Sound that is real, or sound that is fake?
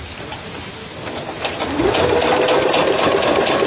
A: real